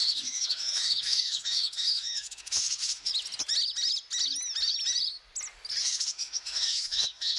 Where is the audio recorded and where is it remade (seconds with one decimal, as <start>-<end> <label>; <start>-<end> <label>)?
0.0-3.1 remade; 3.1-5.8 recorded; 5.8-7.4 remade